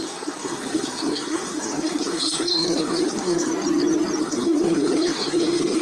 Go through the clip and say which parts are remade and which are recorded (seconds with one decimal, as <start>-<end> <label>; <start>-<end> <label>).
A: 0.0-3.5 remade; 3.5-4.2 recorded; 4.2-5.8 remade